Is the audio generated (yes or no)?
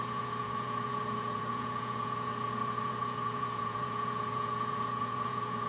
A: yes